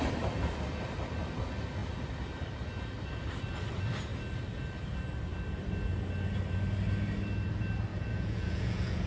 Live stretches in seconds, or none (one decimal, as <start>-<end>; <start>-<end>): 0.0-7.9